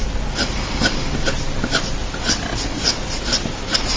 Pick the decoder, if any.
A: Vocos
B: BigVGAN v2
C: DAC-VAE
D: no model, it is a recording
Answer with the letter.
D